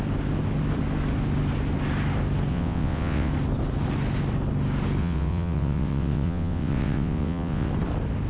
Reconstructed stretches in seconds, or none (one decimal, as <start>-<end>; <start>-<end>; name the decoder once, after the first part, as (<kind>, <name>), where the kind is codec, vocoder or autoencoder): 2.5-3.3 (vocoder, WaveNeXt); 5.0-7.7